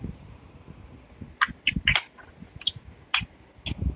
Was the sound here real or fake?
real